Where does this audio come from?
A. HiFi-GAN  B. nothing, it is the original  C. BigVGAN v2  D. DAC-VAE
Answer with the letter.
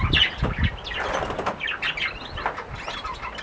B